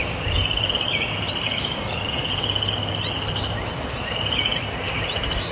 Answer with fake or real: real